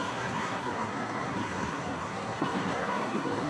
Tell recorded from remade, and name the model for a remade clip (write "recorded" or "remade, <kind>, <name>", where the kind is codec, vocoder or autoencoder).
remade, codec, SNAC